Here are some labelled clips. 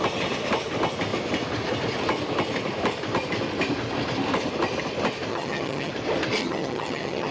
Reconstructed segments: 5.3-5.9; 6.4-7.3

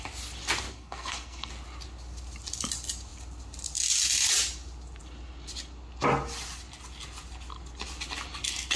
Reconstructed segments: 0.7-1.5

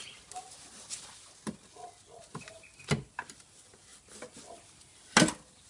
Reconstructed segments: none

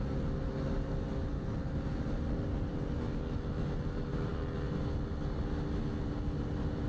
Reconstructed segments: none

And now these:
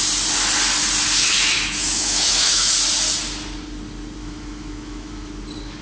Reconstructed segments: 1.2-2.7; 4.2-5.3

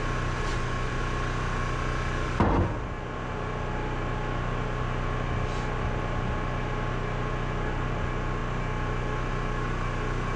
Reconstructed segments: 0.5-1.0

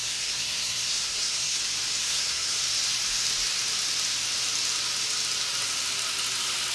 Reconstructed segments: 0.0-1.6; 2.0-2.6

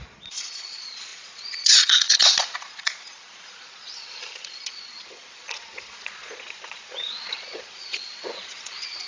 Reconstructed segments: 0.0-9.1